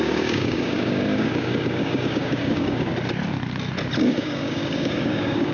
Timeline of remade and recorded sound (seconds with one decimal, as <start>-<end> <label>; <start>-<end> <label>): 0.0-2.9 remade; 2.9-4.0 recorded; 4.0-5.5 remade